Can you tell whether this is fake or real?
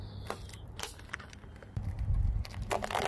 real